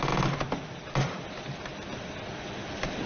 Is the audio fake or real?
real